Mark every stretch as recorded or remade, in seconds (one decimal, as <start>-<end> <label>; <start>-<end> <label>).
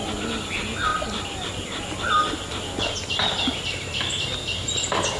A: 0.0-5.2 recorded